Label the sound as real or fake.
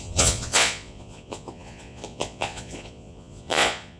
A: fake